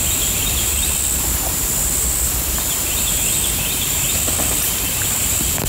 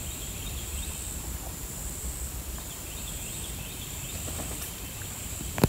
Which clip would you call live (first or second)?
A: first